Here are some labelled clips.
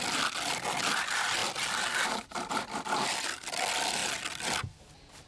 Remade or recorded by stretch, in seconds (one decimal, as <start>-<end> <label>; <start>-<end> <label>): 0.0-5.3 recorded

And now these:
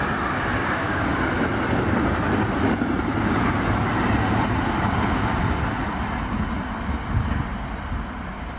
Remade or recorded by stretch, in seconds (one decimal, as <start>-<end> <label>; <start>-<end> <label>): 0.0-0.6 recorded; 0.6-1.2 remade; 1.2-8.6 recorded

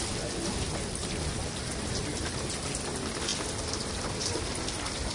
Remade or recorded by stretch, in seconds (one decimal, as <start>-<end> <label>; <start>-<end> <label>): 0.0-5.1 recorded